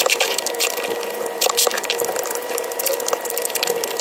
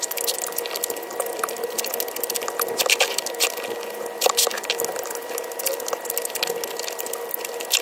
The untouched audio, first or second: second